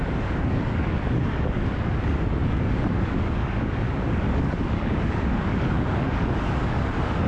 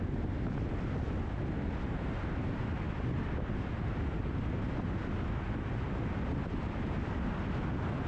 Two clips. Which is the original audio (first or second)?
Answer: second